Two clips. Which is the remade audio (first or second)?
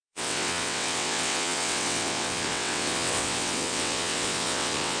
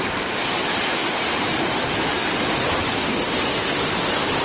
first